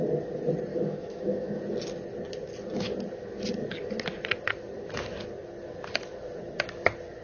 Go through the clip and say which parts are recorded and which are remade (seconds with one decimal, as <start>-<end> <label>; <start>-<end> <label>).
0.0-0.7 recorded; 0.7-1.6 remade; 1.6-7.2 recorded